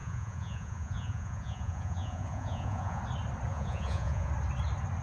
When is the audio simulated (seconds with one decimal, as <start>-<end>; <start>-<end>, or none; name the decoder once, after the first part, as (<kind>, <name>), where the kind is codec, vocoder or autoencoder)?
0.0-3.0 (vocoder, Vocos); 3.5-4.3